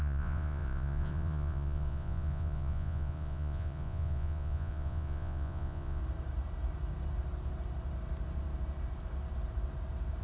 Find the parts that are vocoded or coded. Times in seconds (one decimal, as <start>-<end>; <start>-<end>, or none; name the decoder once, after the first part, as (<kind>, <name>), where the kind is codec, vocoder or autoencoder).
0.0-6.0 (vocoder, Vocos)